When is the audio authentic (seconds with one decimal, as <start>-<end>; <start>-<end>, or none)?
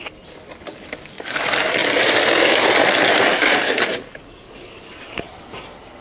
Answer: 0.0-0.7; 1.4-3.6; 4.8-6.0